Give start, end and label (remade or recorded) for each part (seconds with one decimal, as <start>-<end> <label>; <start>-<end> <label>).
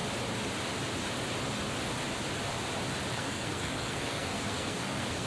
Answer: 0.0-3.1 recorded; 3.1-5.3 remade